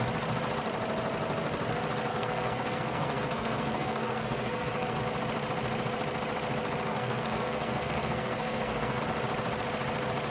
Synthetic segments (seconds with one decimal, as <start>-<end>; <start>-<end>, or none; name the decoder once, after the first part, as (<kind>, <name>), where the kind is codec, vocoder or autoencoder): 2.1-5.0 (codec, SNAC); 6.9-9.0